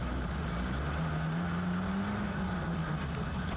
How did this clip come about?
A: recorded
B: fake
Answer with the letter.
A